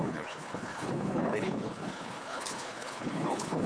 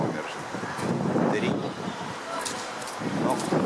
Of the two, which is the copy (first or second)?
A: first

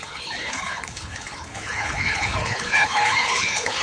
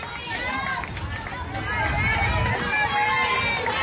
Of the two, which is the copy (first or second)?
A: first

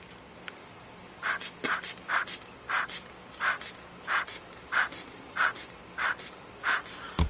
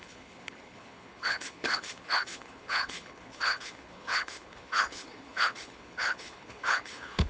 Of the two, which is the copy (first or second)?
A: second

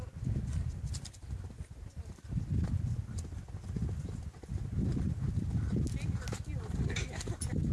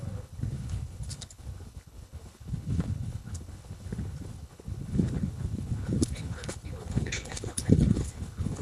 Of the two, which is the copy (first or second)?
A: second